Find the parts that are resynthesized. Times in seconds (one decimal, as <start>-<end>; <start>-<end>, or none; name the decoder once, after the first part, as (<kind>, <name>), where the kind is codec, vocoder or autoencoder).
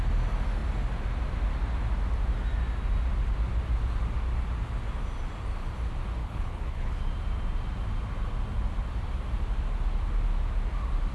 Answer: 6.2-7.0 (codec, HILCodec)